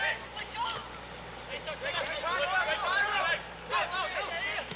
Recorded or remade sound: recorded